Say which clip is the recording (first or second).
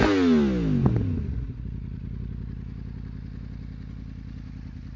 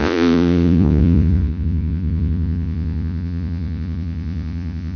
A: first